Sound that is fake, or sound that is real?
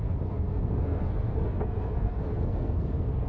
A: fake